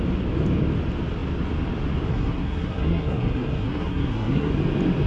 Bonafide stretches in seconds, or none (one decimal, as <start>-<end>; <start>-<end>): 0.0-2.1; 4.5-5.1